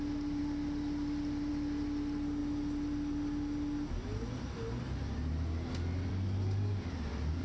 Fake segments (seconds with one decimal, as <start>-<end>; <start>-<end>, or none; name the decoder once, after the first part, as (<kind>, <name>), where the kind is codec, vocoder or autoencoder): none